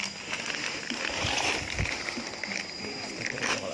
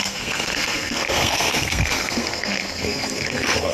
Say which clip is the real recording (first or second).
first